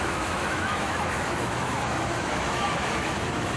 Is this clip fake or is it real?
fake